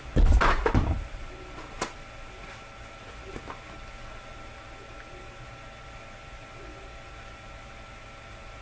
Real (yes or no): yes